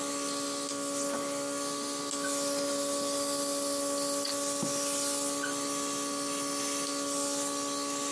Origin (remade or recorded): recorded